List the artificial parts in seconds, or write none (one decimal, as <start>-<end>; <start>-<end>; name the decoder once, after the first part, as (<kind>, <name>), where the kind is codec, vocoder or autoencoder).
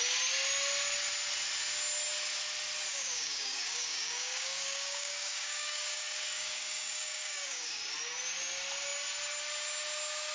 2.9-7.8 (codec, DAC)